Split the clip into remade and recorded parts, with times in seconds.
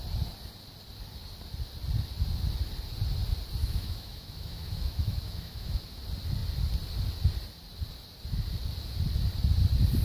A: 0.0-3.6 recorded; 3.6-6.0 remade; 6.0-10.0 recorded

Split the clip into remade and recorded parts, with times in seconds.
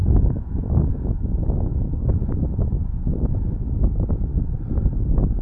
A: 0.0-0.9 remade; 0.9-1.7 recorded; 1.7-4.3 remade; 4.3-5.4 recorded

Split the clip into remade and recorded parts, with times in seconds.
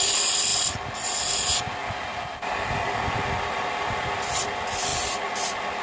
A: 0.0-5.8 recorded